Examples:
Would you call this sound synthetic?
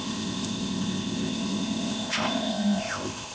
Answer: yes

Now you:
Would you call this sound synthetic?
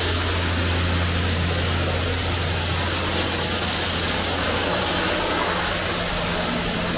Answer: no